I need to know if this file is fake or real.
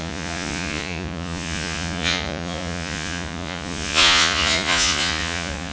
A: fake